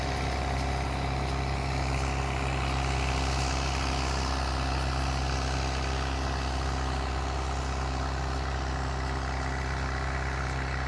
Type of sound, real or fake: real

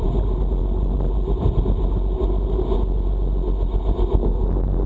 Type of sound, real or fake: real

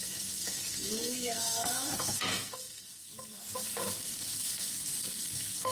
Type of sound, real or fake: fake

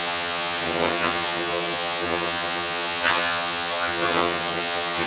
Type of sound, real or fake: fake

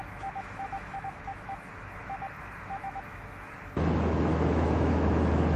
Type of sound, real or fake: fake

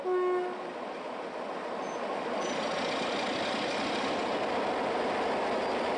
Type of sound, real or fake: real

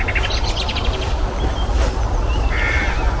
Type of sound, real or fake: real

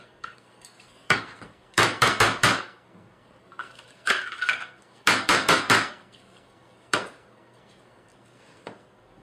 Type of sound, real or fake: fake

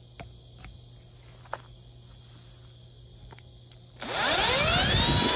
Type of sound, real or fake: real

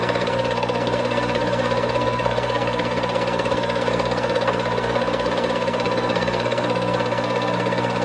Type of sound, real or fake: fake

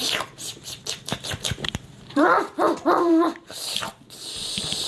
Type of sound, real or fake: fake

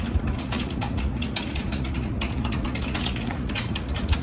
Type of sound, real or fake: fake